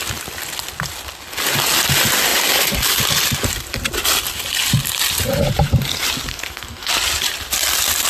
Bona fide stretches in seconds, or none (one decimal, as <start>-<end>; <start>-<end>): 0.0-6.3; 6.9-8.1